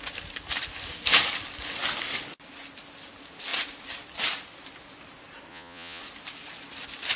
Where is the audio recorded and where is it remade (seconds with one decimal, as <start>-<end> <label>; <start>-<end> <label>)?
0.0-5.5 recorded; 5.5-6.0 remade; 6.0-7.2 recorded

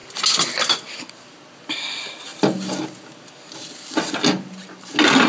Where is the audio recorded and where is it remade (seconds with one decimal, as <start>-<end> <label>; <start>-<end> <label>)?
0.0-5.3 recorded